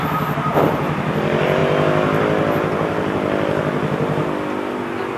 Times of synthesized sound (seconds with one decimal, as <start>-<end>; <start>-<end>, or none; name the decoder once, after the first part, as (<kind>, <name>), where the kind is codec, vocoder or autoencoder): none